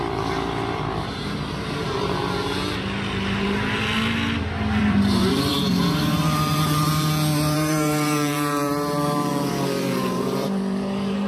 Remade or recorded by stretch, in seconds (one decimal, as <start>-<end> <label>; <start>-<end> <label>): 0.0-2.2 remade; 2.2-4.8 recorded; 4.8-11.3 remade